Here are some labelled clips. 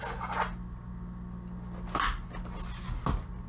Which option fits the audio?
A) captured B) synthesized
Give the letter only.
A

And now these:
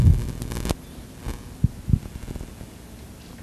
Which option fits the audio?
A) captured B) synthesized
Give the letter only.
A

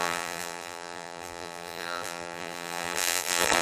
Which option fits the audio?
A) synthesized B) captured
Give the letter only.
A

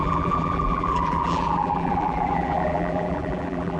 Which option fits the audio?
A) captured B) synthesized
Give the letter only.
B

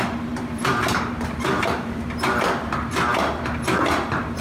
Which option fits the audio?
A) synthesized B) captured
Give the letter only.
A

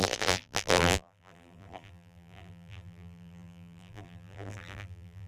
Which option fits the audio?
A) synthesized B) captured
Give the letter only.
A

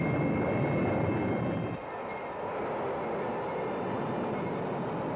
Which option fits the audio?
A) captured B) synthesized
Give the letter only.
A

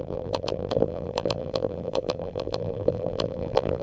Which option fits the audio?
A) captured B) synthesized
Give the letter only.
B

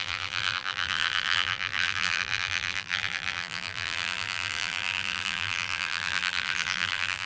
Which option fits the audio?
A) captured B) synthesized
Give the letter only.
B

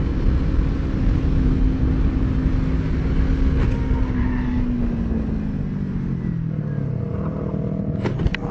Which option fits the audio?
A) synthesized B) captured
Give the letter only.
B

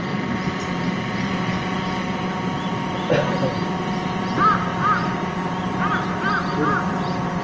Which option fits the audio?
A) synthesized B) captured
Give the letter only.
B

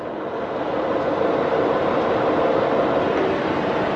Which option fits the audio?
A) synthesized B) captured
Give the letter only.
B